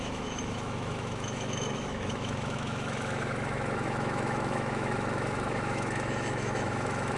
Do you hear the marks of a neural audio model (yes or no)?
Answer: yes